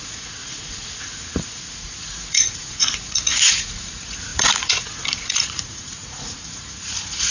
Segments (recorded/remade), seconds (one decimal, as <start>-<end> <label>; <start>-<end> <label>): 0.0-7.3 remade